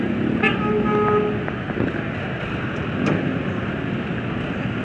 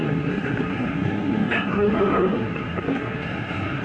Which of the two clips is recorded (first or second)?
first